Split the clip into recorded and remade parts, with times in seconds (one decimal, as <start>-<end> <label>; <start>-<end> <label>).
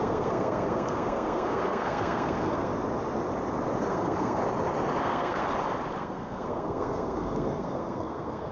0.0-2.7 remade; 2.7-3.9 recorded; 3.9-4.4 remade; 4.4-5.0 recorded; 5.0-5.4 remade; 5.4-6.0 recorded; 6.0-8.5 remade